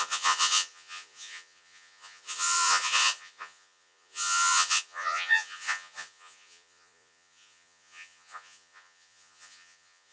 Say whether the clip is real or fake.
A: fake